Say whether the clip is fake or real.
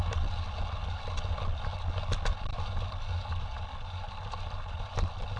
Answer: real